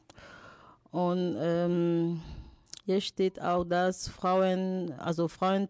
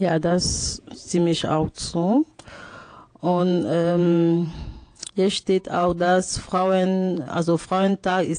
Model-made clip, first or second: second